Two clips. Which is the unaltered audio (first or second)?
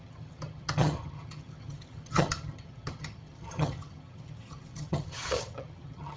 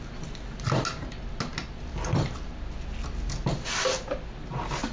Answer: second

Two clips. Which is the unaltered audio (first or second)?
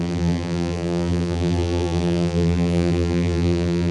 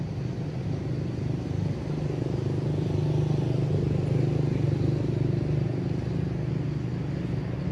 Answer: second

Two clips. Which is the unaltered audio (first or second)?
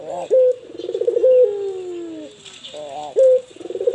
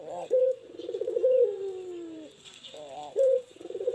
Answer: first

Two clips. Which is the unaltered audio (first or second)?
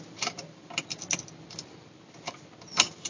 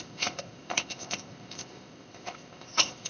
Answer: first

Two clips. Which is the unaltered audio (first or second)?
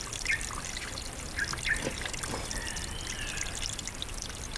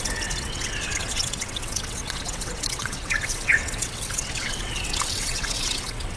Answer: first